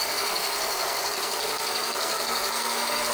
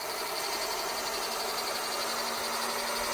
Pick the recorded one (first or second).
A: second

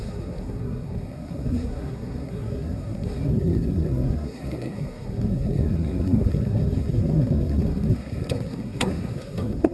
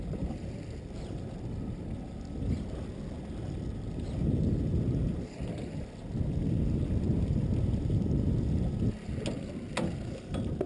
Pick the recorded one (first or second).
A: second